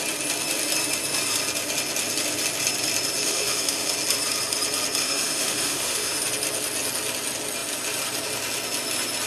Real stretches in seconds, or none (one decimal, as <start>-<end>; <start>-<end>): 0.0-3.2; 3.9-5.0; 6.2-9.3